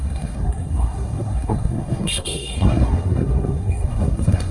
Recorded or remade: remade